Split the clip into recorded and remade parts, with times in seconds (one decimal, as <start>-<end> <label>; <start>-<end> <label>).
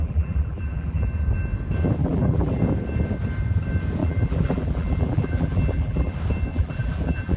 0.0-1.1 remade; 1.1-2.0 recorded; 2.0-2.6 remade; 2.6-4.0 recorded; 4.0-6.1 remade; 6.1-6.5 recorded; 6.5-7.4 remade